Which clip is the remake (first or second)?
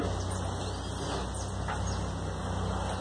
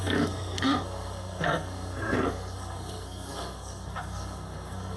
second